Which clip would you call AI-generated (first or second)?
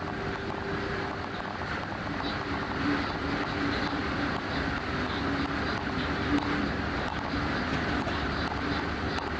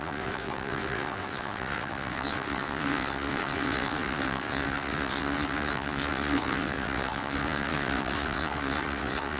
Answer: second